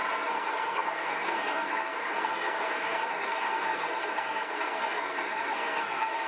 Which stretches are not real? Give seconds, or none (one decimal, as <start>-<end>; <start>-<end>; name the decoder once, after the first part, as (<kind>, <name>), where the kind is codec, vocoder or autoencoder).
0.0-6.3 (codec, SNAC)